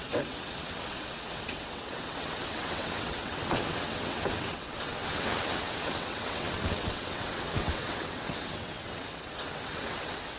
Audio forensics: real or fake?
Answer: fake